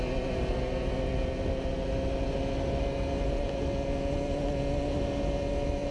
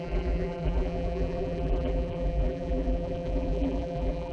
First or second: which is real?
first